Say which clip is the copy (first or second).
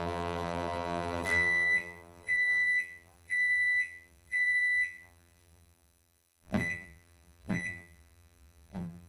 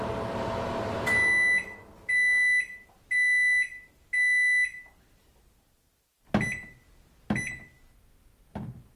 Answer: first